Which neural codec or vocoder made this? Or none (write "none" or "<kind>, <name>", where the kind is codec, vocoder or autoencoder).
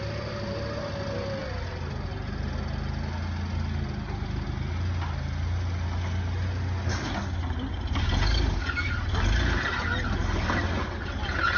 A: none